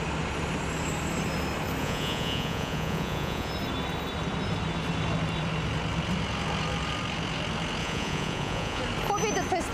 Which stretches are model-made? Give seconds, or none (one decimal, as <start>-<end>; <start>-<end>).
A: 1.8-3.5; 7.8-8.8